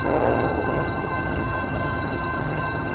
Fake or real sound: fake